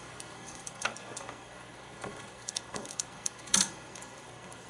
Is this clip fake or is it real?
fake